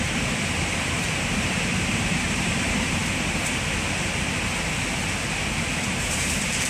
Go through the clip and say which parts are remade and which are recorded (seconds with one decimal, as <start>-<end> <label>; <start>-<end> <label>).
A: 0.0-3.0 remade; 3.0-5.8 recorded; 5.8-6.7 remade